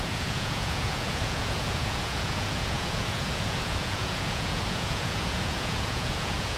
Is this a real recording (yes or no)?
no